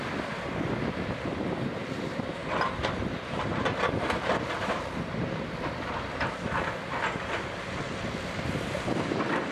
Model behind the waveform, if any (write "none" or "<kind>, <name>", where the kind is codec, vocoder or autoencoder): vocoder, BigVGAN v2